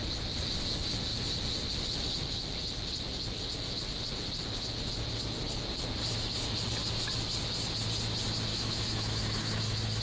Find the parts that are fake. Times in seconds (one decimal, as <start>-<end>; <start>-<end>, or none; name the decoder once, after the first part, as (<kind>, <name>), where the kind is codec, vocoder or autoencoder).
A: 8.5-10.0 (autoencoder, DAC-VAE)